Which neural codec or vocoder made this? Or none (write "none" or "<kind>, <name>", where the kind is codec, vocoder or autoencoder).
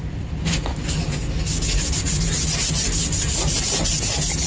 none